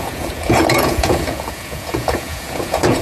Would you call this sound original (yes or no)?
no